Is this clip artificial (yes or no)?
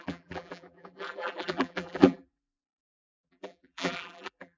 yes